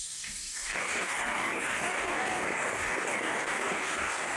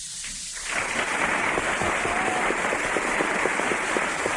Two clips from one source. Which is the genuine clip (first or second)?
second